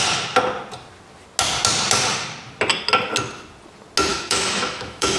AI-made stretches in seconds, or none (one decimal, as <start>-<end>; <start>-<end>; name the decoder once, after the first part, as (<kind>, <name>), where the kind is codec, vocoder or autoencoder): 4.1-5.2 (autoencoder, DAC-VAE)